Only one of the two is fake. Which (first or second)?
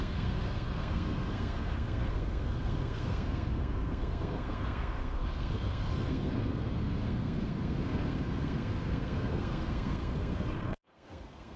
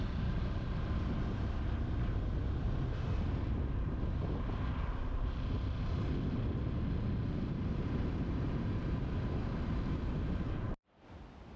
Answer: first